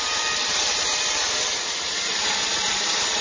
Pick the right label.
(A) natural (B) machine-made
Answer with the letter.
A